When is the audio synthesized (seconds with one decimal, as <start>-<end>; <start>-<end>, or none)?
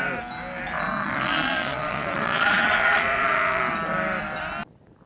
1.0-3.6